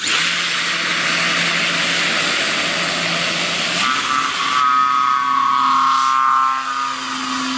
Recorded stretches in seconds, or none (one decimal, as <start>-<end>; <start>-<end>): 0.0-7.6